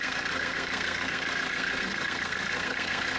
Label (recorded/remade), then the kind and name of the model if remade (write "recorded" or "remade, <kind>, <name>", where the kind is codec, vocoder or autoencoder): remade, codec, SNAC